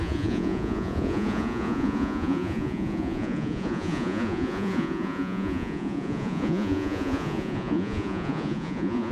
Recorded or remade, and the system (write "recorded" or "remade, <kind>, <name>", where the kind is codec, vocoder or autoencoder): remade, vocoder, Vocos